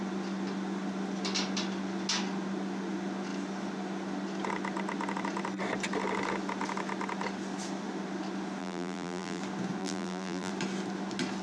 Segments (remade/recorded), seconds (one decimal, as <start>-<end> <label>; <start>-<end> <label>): 0.0-8.6 recorded; 8.6-9.4 remade; 9.4-9.8 recorded; 9.8-10.5 remade; 10.5-11.4 recorded